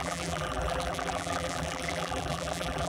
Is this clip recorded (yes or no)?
no